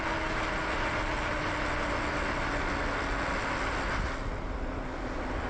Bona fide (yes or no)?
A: yes